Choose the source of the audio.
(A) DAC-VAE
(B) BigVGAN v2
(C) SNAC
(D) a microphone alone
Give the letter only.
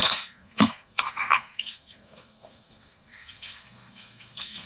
C